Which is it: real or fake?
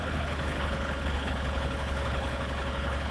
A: fake